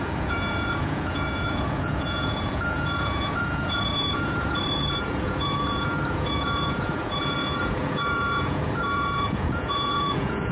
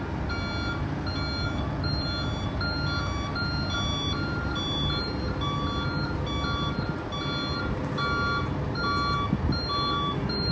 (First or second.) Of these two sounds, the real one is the second